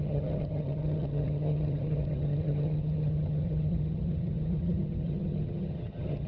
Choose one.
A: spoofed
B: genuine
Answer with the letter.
A